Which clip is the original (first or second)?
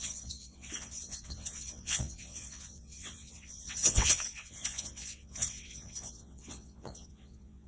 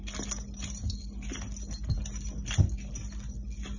second